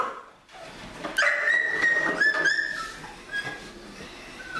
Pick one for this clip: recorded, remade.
recorded